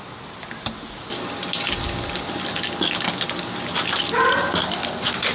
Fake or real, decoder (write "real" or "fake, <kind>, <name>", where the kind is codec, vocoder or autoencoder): real